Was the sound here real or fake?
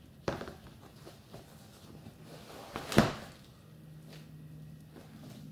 real